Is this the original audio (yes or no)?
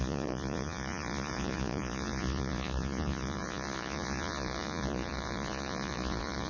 no